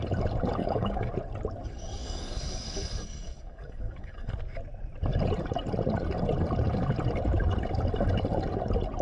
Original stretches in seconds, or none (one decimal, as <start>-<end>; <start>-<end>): 0.0-0.6; 1.1-2.0; 4.3-9.0